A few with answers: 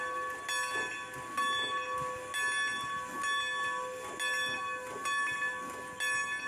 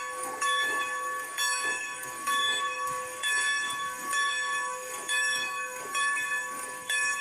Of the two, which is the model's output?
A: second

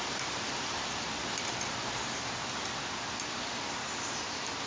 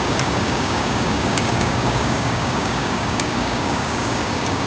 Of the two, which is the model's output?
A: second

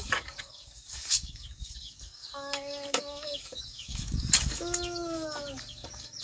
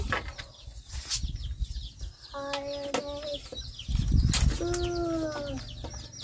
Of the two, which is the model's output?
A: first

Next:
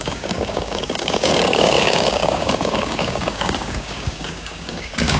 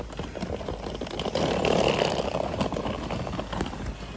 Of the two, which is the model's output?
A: first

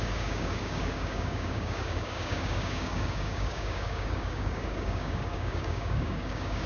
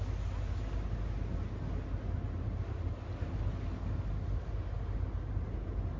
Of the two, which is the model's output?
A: first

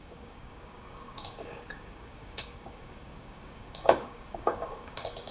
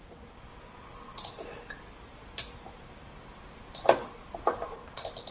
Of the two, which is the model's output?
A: first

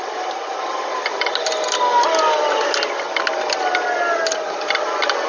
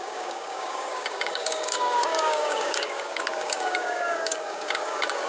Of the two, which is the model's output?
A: second